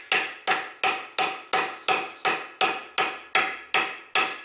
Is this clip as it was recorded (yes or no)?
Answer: yes